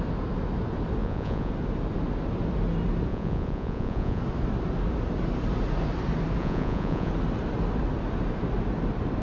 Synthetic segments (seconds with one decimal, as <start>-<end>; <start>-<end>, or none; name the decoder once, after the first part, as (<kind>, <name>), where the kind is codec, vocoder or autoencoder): 1.0-1.5 (vocoder, Vocos); 3.1-4.2; 6.4-7.1